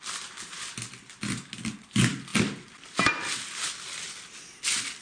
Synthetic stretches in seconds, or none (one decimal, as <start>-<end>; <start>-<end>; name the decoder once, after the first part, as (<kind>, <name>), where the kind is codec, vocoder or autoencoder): none